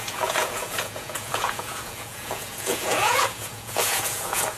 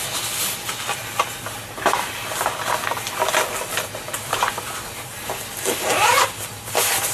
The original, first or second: second